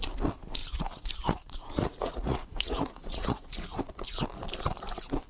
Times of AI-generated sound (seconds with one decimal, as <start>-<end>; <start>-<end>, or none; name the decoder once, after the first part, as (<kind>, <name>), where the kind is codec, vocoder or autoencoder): 0.6-3.8 (vocoder, Vocos)